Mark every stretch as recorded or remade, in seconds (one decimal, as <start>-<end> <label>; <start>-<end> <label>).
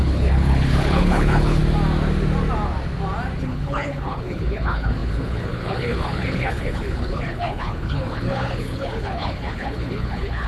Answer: 0.0-1.6 remade; 1.6-3.4 recorded; 3.4-10.5 remade